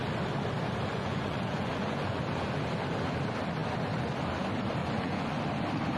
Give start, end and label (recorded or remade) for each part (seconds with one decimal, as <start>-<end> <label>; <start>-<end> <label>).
0.0-0.9 recorded; 0.9-2.2 remade; 2.2-4.8 recorded; 4.8-5.4 remade; 5.4-6.0 recorded